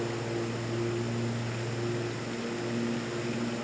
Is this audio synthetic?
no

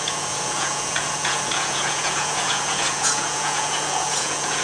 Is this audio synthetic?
yes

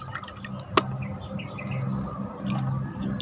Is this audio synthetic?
no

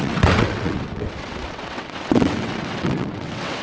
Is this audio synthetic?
yes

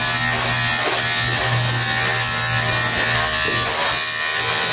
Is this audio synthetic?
no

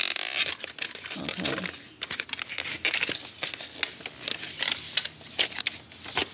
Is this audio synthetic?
no